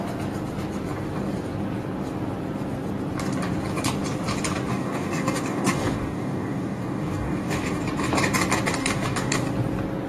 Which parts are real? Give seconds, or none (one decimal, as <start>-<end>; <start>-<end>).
0.0-4.7; 7.8-8.8; 9.4-10.1